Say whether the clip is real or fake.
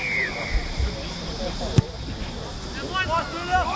real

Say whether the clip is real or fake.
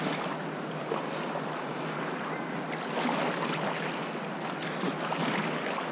real